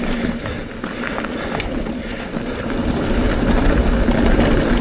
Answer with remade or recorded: recorded